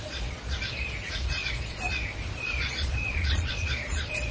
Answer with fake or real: fake